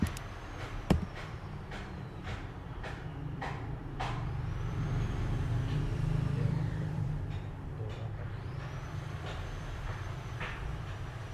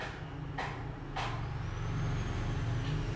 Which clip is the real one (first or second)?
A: second